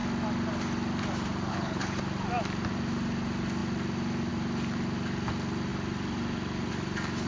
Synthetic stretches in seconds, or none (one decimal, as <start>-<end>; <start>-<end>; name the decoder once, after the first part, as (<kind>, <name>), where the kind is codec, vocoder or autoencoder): 1.5-2.0 (codec, HILCodec)